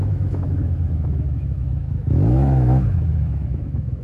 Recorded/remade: remade